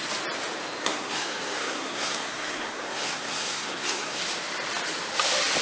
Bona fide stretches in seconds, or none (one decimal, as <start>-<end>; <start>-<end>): 0.0-0.8; 4.2-5.6